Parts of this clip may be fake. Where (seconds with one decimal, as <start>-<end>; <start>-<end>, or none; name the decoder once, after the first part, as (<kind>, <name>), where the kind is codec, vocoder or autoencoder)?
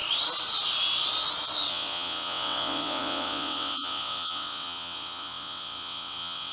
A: 1.7-6.5 (vocoder, WaveNeXt)